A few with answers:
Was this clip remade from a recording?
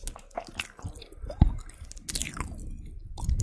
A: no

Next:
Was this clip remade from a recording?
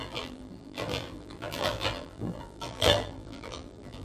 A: yes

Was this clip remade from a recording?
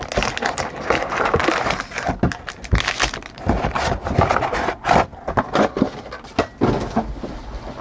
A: no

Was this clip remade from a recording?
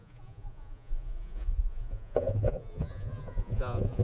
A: yes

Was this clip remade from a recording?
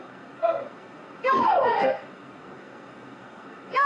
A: yes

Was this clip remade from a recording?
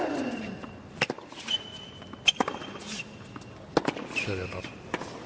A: no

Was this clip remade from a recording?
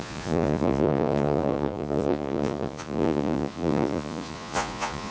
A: yes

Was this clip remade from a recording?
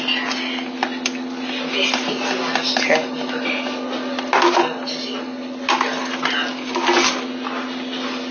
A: no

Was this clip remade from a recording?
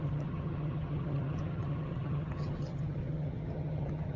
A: yes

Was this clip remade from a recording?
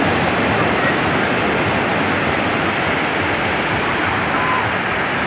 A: no